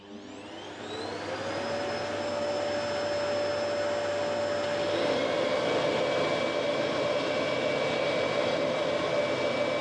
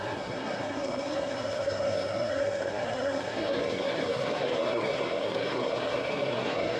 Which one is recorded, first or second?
first